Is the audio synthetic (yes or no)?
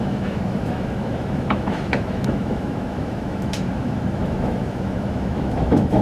yes